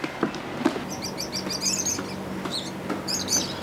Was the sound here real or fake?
real